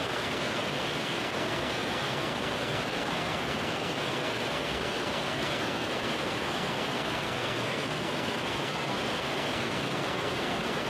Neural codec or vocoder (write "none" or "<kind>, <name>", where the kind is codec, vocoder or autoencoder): codec, SNAC